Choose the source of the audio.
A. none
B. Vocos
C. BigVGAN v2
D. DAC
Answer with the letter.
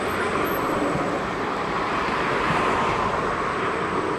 A